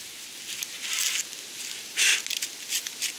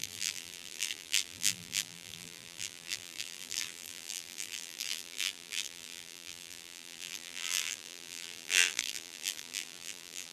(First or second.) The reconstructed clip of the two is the second